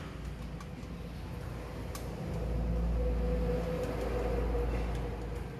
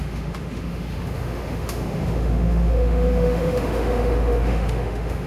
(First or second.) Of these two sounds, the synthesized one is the second